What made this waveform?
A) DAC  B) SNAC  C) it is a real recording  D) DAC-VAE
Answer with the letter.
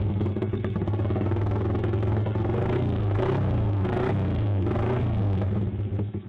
B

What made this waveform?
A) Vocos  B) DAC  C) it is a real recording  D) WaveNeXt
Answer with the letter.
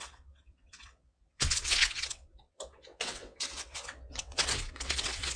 D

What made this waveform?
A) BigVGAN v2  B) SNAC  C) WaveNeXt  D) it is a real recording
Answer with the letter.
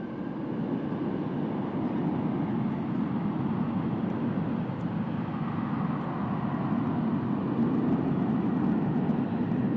D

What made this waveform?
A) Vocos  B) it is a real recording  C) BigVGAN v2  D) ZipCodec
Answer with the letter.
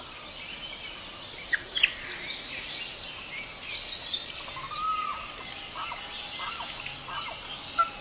B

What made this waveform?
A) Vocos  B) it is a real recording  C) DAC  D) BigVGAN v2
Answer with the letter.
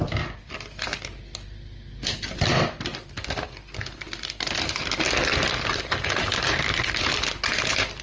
B